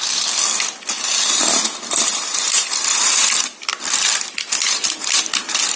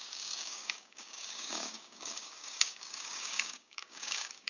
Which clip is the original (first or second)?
first